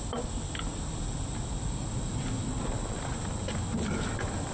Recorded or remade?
recorded